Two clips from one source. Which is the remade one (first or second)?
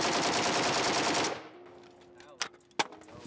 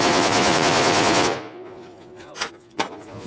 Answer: second